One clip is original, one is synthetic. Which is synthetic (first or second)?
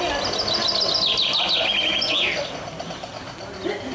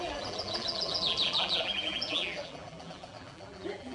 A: second